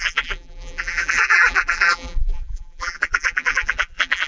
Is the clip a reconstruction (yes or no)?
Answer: yes